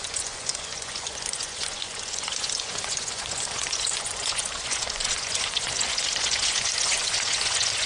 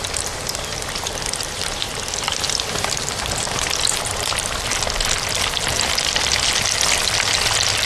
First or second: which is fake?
first